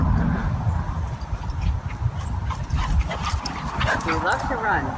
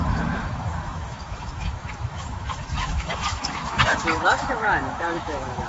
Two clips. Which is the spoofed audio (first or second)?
second